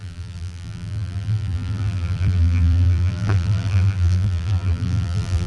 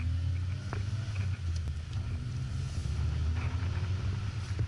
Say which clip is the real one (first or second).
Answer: second